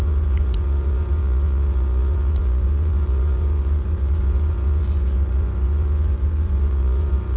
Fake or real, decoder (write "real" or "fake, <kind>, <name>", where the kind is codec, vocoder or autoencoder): fake, vocoder, Vocos